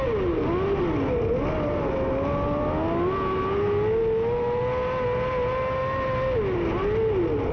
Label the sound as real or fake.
real